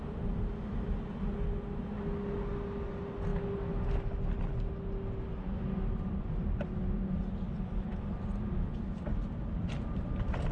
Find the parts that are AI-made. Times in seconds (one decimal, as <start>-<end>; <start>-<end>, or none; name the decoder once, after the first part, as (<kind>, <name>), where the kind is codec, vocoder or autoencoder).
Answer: none